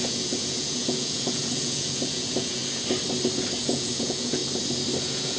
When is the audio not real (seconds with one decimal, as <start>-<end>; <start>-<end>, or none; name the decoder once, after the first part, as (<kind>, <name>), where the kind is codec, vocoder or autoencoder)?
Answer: 0.0-2.6 (vocoder, Vocos); 3.6-4.4; 5.0-5.4